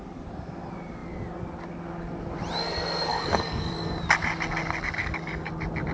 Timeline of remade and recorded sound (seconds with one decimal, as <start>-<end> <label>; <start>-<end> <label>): 0.0-3.1 recorded; 3.1-3.9 remade; 3.9-5.0 recorded; 5.0-5.5 remade; 5.5-5.9 recorded